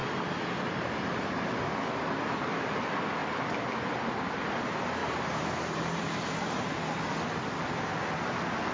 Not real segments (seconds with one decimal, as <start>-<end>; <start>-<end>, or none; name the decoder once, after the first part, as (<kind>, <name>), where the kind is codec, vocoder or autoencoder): 5.0-6.7 (vocoder, BigVGAN v2)